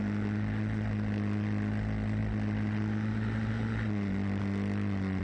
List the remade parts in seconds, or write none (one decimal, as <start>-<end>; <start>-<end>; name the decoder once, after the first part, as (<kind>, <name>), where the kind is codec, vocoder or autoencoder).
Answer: none